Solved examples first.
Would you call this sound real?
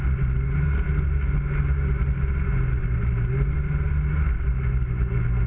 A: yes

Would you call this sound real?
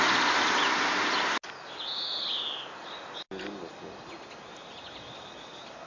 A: yes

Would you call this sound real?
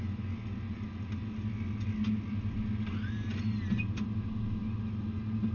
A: yes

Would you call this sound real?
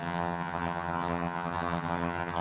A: no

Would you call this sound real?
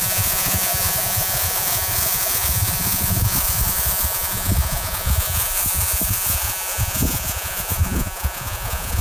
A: no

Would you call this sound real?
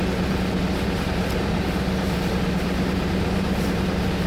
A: yes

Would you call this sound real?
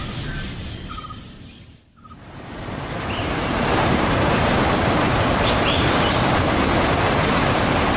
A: no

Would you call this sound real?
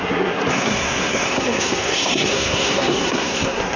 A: no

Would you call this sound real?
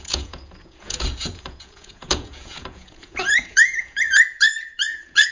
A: no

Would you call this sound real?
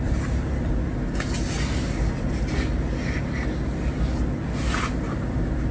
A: yes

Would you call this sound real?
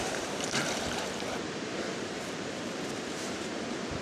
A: no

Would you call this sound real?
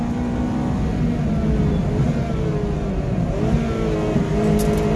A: yes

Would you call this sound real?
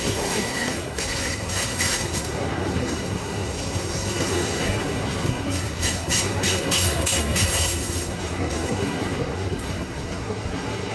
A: no